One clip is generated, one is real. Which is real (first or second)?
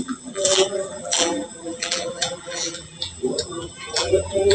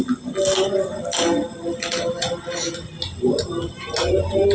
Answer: second